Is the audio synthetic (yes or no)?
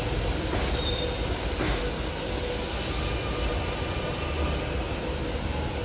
no